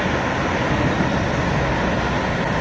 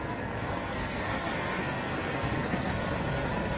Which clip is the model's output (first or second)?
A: second